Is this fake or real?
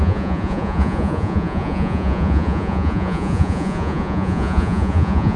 fake